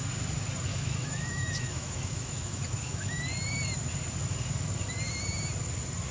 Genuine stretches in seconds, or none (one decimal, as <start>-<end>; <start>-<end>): 0.0-0.7; 3.2-6.1